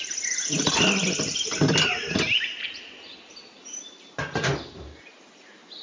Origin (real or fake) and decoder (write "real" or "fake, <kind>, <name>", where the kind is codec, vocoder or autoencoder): real